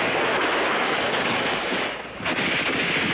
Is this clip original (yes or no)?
no